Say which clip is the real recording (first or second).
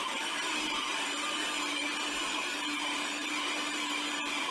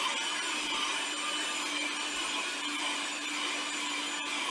second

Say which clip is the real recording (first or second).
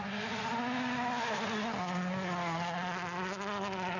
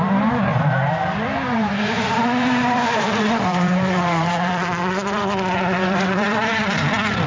first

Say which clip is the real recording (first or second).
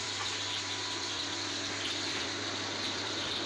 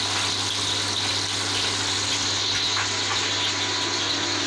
second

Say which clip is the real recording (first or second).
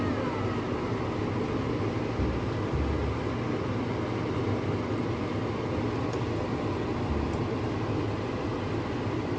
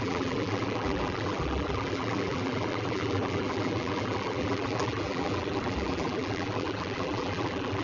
first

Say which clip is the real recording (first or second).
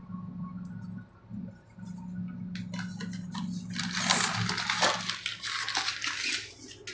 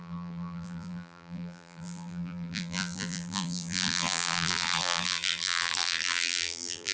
first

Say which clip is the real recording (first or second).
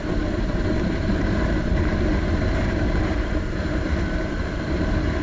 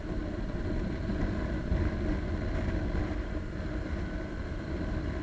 second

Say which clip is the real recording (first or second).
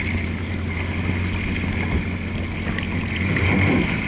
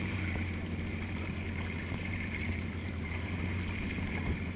first